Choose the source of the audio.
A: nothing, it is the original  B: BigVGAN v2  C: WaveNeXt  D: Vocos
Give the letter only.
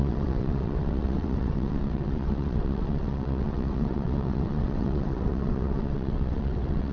C